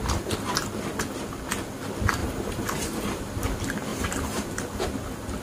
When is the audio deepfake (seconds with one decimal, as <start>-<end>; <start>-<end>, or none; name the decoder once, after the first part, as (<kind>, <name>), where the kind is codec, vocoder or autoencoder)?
2.2-3.2 (vocoder, BigVGAN v2); 3.9-4.8